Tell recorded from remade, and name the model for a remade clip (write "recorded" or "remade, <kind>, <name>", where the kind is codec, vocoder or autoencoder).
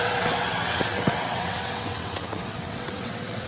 remade, vocoder, WaveNeXt